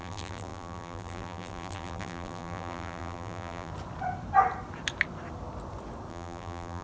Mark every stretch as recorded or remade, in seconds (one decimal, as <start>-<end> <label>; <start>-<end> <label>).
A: 0.0-3.7 remade; 3.7-6.1 recorded; 6.1-6.8 remade